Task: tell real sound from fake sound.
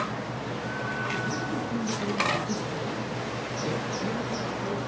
real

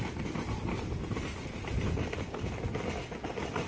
fake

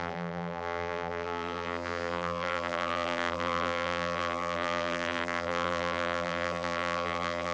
fake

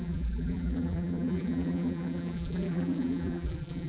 fake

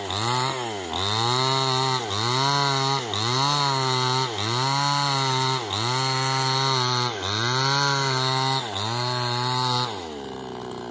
real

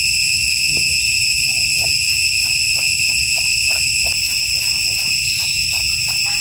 real